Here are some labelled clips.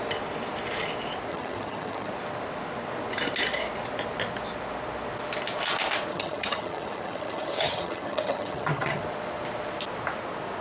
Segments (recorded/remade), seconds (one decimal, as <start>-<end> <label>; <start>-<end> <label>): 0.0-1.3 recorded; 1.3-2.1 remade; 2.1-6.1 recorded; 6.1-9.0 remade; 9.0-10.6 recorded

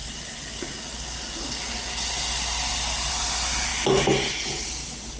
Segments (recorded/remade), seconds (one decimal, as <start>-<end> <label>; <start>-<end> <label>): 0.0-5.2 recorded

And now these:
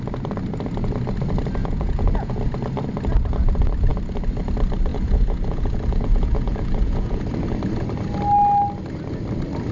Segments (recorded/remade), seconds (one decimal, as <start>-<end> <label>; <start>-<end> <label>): 0.0-1.6 recorded; 1.6-2.3 remade; 2.3-4.9 recorded; 4.9-7.2 remade; 7.2-9.7 recorded